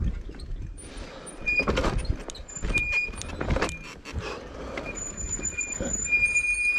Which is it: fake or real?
real